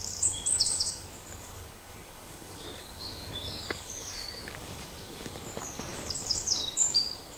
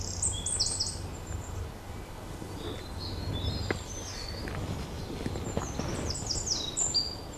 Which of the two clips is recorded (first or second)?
second